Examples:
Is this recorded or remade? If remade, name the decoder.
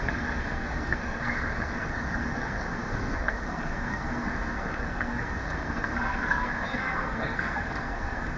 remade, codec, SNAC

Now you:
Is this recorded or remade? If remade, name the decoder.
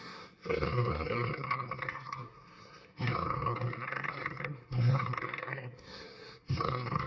remade, codec, SNAC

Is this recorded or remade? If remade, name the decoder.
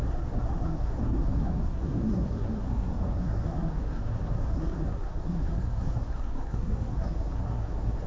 remade, codec, SNAC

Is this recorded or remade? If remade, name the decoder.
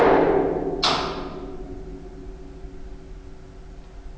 recorded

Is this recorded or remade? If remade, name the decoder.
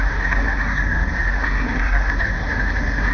remade, codec, SNAC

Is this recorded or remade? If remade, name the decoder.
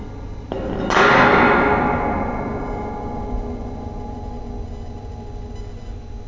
recorded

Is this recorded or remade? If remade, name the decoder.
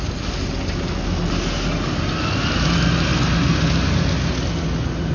recorded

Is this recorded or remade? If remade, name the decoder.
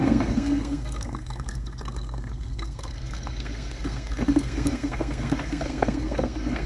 remade, codec, SNAC